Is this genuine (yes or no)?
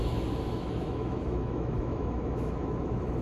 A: no